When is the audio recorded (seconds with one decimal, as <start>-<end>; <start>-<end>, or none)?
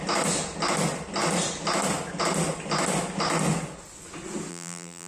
0.0-4.5